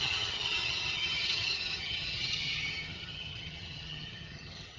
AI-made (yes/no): yes